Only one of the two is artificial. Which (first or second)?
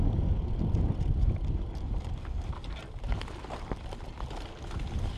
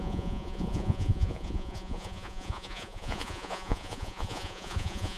second